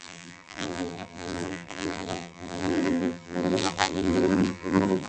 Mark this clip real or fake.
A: fake